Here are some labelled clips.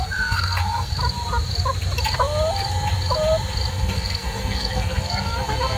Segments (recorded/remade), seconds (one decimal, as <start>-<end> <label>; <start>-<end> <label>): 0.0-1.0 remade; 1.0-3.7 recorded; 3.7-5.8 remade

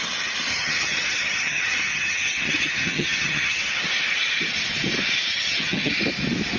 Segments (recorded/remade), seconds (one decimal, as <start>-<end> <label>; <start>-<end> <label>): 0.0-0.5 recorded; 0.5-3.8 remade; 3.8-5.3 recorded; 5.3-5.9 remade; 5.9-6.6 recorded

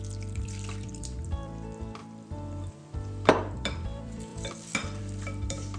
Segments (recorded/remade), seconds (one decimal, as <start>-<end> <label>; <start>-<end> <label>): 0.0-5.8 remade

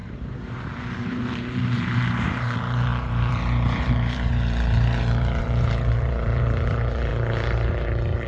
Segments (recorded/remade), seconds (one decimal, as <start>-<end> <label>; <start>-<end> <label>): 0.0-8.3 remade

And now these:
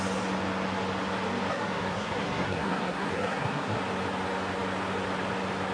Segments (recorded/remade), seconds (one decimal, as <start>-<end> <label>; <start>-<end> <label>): 0.0-1.5 recorded; 1.5-3.8 remade; 3.8-5.7 recorded

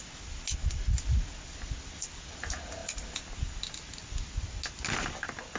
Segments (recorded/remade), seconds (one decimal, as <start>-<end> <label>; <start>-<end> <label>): 0.0-5.6 recorded

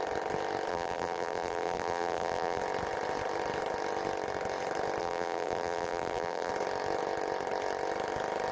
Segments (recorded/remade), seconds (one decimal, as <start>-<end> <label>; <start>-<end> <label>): 0.0-0.7 recorded; 0.7-2.6 remade; 2.6-5.0 recorded; 5.0-6.5 remade; 6.5-8.5 recorded